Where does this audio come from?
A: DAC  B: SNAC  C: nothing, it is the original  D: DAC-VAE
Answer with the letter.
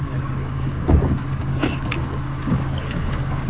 A